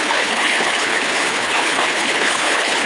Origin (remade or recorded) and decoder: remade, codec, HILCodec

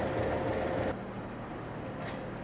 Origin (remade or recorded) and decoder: recorded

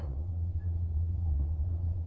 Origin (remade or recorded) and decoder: remade, vocoder, Vocos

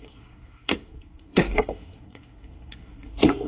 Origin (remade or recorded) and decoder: remade, codec, SNAC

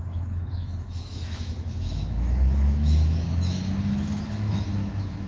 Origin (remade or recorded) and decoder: remade, autoencoder, DAC-VAE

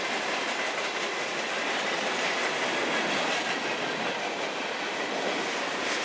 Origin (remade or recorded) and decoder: recorded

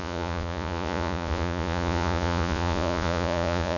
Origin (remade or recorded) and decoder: remade, vocoder, Vocos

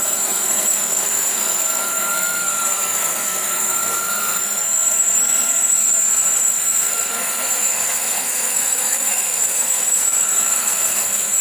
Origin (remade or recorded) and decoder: remade, codec, SNAC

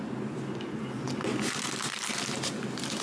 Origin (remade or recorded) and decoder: recorded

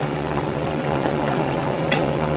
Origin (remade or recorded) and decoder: remade, vocoder, WaveNeXt